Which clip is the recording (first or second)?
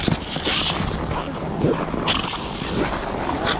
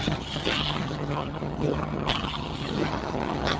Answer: first